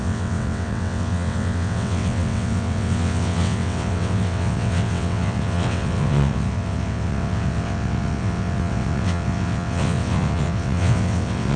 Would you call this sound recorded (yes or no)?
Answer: no